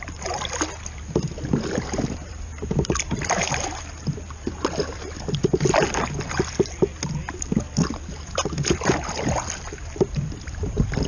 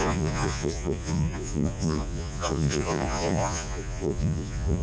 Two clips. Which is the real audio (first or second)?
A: first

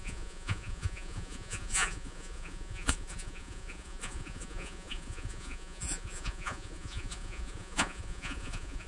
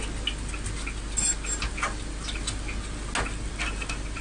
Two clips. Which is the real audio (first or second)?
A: second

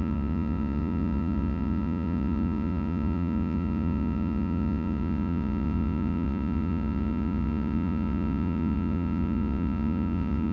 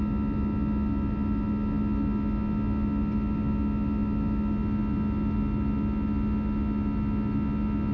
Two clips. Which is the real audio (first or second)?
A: second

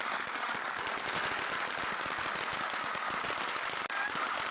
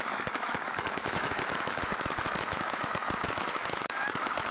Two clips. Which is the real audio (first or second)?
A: first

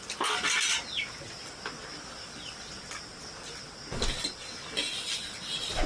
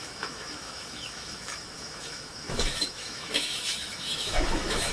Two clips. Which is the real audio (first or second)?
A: first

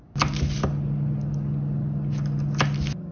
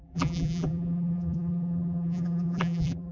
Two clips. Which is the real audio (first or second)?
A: first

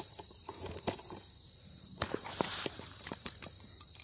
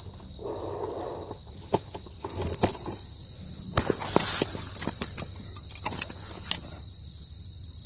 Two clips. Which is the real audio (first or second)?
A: second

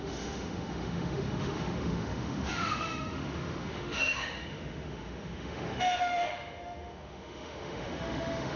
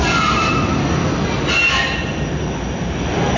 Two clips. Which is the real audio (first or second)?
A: second